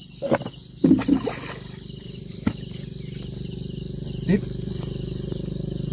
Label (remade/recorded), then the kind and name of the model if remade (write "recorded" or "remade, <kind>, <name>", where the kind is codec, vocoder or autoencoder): recorded